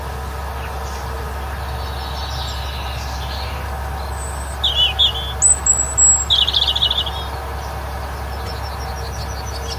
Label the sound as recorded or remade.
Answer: recorded